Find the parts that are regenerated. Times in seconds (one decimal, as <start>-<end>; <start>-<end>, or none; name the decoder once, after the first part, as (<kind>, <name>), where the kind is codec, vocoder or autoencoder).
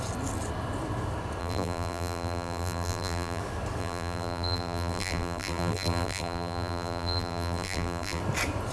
1.4-3.4 (vocoder, BigVGAN v2); 3.8-8.2